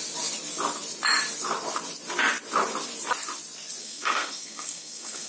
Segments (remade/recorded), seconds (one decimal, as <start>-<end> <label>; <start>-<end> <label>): 0.0-3.8 recorded; 3.8-5.3 remade